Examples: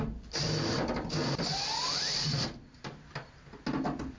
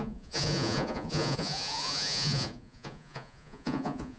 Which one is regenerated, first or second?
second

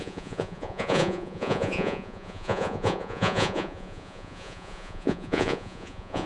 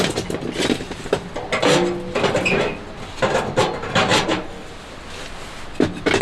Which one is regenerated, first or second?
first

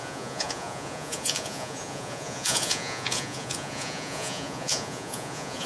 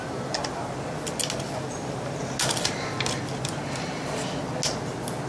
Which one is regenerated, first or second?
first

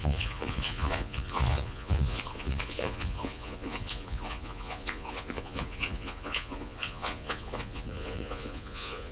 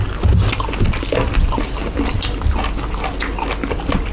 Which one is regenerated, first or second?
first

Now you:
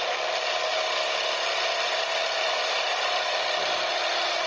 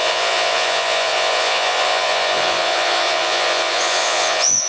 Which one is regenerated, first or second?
second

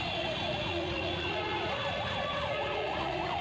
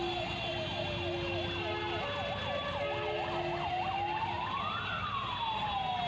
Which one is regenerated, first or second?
first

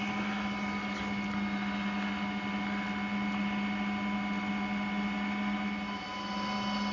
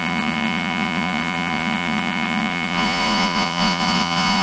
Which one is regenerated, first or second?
second